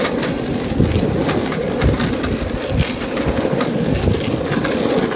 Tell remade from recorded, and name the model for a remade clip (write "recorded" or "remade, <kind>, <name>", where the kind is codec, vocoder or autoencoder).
recorded